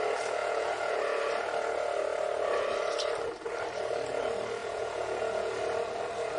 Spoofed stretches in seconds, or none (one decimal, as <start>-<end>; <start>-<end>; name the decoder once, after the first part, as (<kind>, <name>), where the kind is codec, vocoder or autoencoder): 0.4-1.0 (vocoder, Vocos); 4.6-5.5